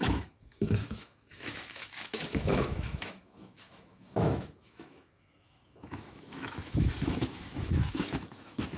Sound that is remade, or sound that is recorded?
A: remade